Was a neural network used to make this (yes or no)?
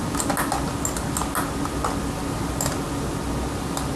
no